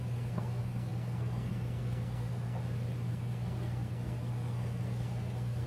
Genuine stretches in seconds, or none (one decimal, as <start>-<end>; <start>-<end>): 2.6-3.1